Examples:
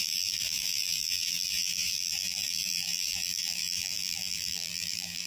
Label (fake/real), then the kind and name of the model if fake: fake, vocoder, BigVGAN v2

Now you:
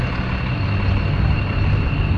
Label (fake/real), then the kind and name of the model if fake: real